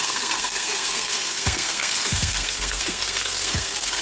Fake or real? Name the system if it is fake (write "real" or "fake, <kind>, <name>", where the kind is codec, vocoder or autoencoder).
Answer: fake, codec, SNAC